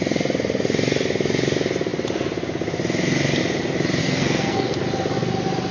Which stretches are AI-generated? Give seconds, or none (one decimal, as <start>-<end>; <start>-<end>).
4.0-4.8